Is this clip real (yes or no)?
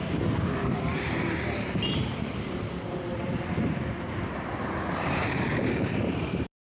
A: no